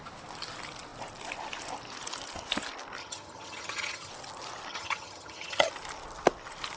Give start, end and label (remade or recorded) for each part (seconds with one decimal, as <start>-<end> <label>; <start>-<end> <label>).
0.0-3.0 recorded; 3.0-4.1 remade; 4.1-4.7 recorded; 4.7-5.7 remade; 5.7-6.8 recorded